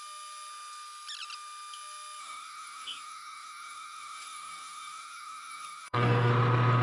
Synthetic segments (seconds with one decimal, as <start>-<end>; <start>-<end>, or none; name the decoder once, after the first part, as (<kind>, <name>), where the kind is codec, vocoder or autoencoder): 2.2-6.3 (codec, DAC)